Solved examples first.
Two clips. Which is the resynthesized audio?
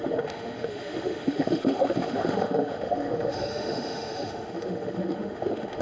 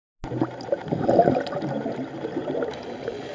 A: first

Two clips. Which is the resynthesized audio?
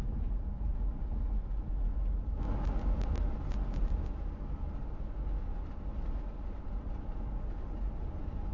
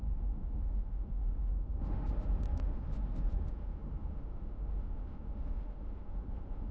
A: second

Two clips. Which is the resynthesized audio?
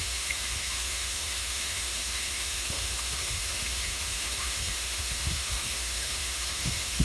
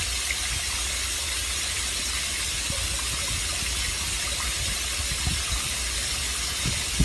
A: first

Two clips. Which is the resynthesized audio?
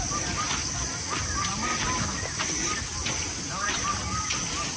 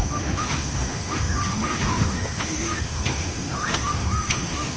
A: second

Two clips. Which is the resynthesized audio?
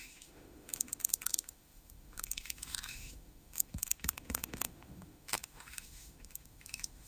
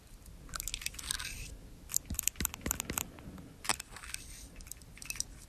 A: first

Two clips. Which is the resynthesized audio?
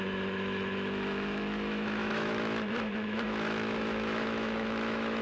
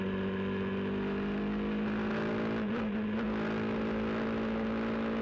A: first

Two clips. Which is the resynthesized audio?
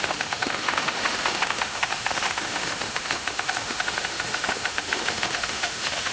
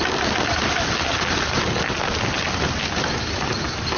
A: first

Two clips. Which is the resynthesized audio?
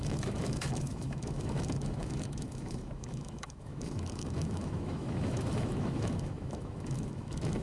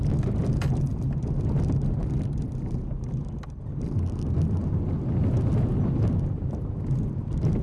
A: first